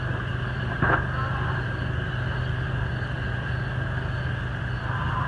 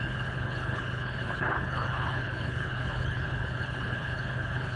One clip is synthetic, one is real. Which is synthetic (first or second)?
second